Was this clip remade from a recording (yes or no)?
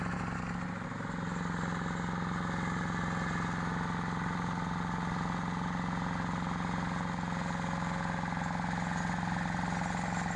no